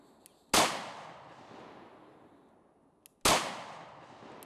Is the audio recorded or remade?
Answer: recorded